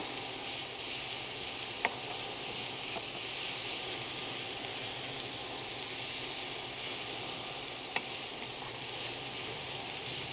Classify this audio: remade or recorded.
recorded